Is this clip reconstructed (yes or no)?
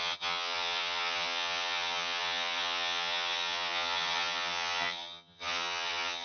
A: yes